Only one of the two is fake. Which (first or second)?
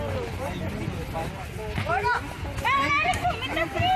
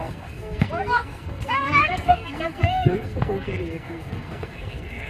second